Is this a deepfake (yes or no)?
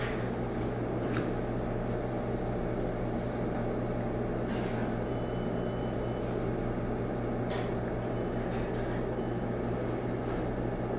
no